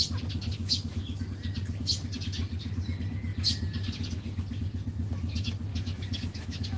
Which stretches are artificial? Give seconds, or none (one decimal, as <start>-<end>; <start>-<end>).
0.6-1.3; 5.7-6.8

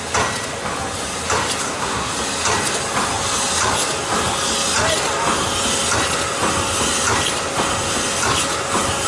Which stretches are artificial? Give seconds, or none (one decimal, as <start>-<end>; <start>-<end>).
1.6-2.1

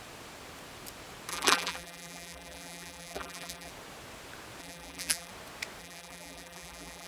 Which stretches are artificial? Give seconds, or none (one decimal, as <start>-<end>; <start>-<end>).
1.3-3.7; 4.6-5.3; 5.8-7.1

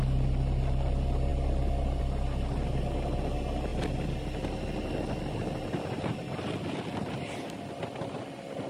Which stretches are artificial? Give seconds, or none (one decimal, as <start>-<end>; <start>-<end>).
none

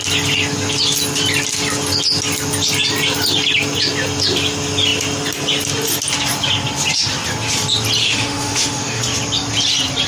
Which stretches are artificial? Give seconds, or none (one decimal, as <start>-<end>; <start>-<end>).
8.0-9.0